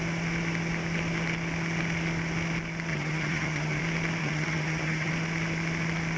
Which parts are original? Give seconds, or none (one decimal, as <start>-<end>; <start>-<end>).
0.0-2.9; 3.8-4.2; 5.1-6.2